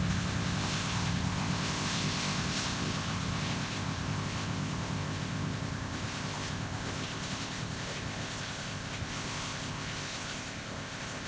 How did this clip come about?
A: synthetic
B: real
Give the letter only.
A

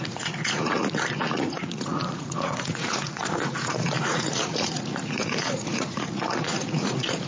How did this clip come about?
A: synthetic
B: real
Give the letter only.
A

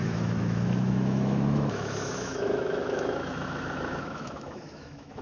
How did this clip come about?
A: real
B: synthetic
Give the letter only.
B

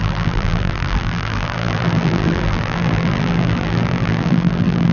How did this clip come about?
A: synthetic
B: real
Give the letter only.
A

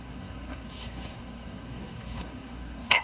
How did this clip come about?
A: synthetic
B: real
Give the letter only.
A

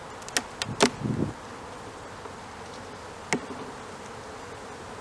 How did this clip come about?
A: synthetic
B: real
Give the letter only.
B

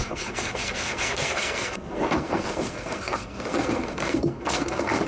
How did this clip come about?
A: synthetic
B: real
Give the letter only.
A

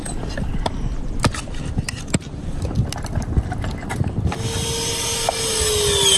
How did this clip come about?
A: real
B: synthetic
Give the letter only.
A